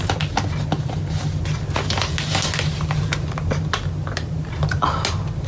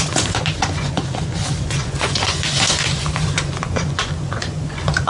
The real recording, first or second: first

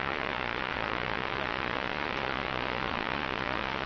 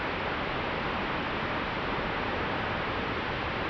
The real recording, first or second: second